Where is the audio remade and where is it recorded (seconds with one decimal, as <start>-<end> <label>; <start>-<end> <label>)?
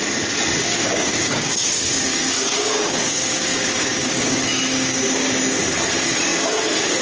0.0-0.6 recorded; 0.6-1.7 remade; 1.7-2.1 recorded; 2.1-5.0 remade; 5.0-7.0 recorded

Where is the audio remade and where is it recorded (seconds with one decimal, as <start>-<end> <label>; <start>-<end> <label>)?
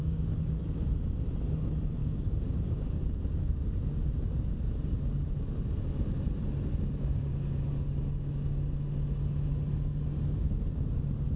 0.0-0.6 remade; 0.6-2.0 recorded; 2.0-3.0 remade; 3.0-7.0 recorded; 7.0-8.0 remade; 8.0-11.4 recorded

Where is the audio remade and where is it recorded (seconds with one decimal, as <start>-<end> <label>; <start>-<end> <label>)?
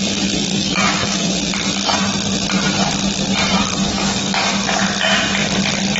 0.0-0.5 recorded; 0.5-1.3 remade; 1.3-3.6 recorded; 3.6-4.4 remade; 4.4-6.0 recorded